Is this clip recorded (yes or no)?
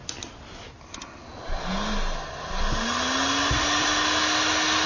yes